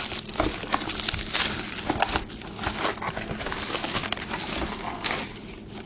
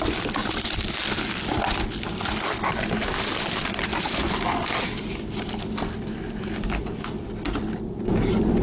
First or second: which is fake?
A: second